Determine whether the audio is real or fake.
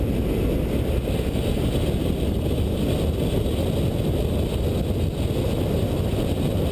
real